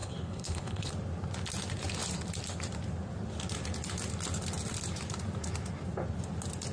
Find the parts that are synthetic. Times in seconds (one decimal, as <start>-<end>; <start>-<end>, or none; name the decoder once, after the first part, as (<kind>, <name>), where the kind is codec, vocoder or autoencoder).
0.0-0.9 (codec, HILCodec)